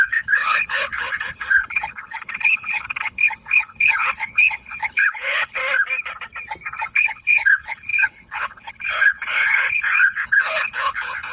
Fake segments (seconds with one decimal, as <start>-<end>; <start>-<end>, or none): 0.0-5.6; 6.9-11.3

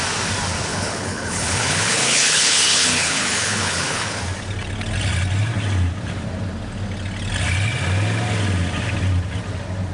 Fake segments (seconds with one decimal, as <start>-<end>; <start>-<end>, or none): 0.7-4.2

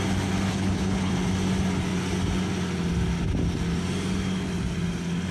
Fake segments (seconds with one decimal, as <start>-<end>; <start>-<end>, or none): 0.5-1.1

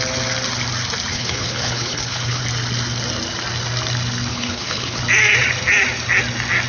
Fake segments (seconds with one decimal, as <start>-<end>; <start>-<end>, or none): 1.1-2.4; 4.3-5.0

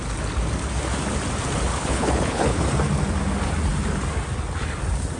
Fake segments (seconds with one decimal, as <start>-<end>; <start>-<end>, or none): 1.7-2.6

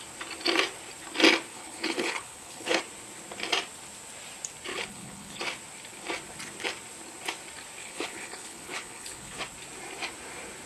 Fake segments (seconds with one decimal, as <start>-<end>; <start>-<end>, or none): 1.5-2.8; 4.7-5.4; 7.8-9.4

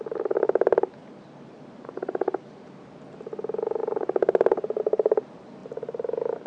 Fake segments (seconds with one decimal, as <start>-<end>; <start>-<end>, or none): none

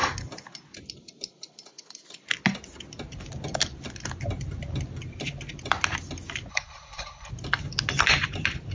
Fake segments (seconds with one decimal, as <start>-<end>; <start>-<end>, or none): 6.5-7.3